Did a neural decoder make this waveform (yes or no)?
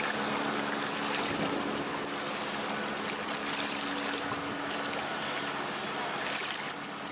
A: no